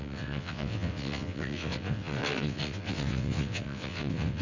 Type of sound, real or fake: fake